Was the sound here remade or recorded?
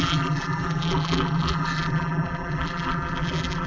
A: remade